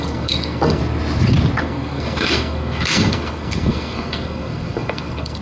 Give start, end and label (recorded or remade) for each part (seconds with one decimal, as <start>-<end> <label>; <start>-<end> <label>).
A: 0.0-0.8 remade; 0.8-1.6 recorded; 1.6-5.4 remade